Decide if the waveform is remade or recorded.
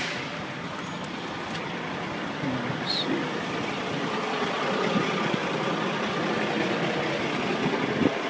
recorded